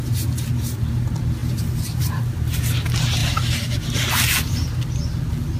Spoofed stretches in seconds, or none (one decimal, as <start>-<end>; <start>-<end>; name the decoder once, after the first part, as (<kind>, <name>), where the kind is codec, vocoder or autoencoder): none